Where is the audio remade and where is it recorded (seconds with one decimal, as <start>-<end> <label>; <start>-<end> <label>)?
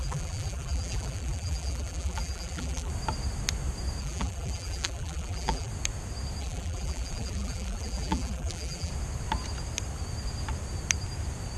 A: 0.0-2.9 remade; 2.9-4.0 recorded; 4.0-5.7 remade; 5.7-6.4 recorded; 6.4-8.9 remade; 8.9-11.6 recorded